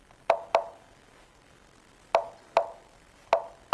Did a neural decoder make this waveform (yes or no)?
no